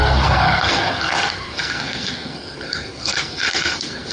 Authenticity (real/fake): fake